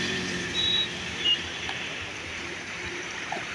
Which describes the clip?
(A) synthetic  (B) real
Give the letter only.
A